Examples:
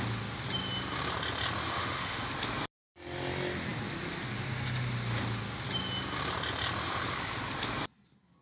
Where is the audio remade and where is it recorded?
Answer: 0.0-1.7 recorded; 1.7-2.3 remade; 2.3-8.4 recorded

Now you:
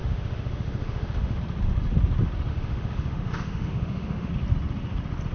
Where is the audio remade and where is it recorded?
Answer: 0.0-1.4 remade; 1.4-2.5 recorded; 2.5-4.3 remade; 4.3-5.3 recorded

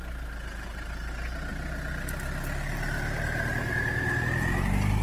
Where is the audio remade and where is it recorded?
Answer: 0.0-5.0 recorded

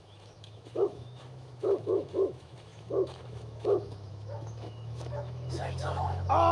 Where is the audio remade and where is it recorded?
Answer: 0.0-6.5 remade

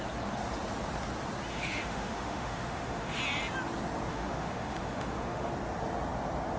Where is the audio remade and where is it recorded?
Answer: 0.0-1.5 recorded; 1.5-3.2 remade; 3.2-4.1 recorded; 4.1-5.5 remade; 5.5-6.6 recorded

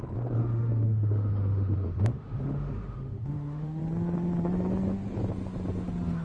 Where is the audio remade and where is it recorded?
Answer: 0.0-0.4 recorded; 0.4-3.8 remade; 3.8-6.2 recorded

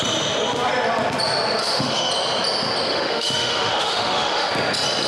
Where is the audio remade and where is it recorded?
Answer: 0.0-1.6 recorded; 1.6-2.1 remade; 2.1-2.9 recorded; 2.9-4.5 remade; 4.5-5.1 recorded

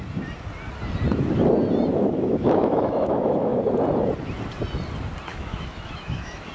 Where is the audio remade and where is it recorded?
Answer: 0.0-1.9 recorded; 1.9-3.6 remade; 3.6-5.3 recorded; 5.3-6.5 remade